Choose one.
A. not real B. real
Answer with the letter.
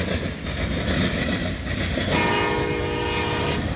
B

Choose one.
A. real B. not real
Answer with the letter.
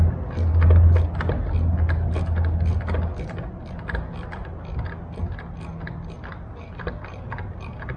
A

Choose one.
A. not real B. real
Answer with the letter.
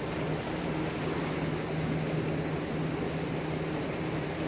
B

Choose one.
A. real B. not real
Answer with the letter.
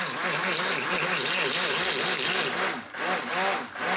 A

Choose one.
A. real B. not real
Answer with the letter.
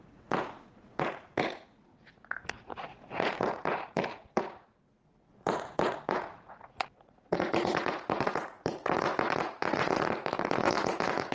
B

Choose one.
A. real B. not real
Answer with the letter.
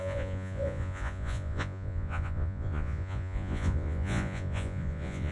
B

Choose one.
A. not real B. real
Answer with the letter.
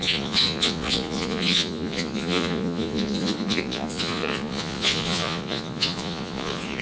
A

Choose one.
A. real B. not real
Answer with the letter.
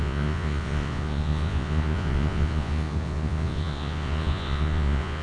B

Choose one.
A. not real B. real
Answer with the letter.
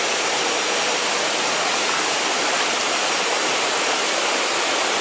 B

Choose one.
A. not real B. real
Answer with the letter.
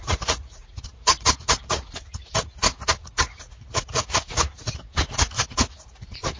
A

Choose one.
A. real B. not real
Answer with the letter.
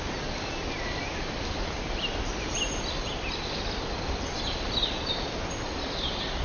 A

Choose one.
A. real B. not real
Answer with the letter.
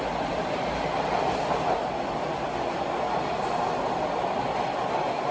A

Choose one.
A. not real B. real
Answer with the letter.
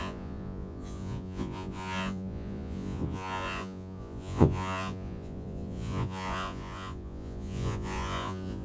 A